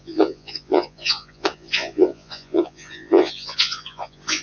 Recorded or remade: remade